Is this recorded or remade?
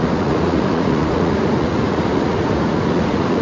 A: remade